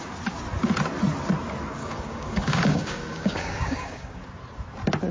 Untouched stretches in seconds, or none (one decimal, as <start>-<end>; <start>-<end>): 0.0-1.8; 4.3-5.1